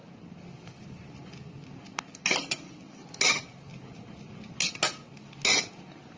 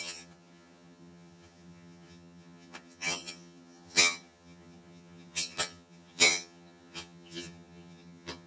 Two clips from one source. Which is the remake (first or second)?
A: second